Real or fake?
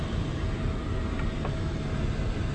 real